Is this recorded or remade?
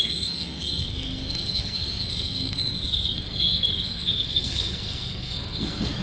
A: remade